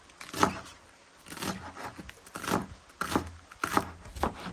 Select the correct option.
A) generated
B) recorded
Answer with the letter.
B